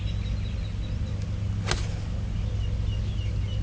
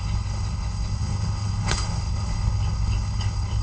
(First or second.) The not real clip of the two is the second